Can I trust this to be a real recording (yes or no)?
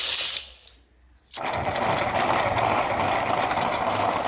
yes